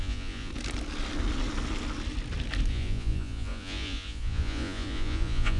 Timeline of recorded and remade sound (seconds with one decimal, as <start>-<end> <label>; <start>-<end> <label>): 0.0-0.5 remade; 0.5-2.7 recorded; 2.7-5.6 remade